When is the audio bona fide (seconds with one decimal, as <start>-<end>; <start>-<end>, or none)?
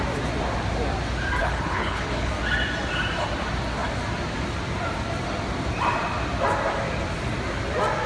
0.0-1.4; 2.3-8.1